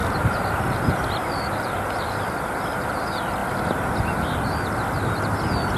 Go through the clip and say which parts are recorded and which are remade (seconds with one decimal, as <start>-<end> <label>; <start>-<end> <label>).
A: 0.0-5.8 recorded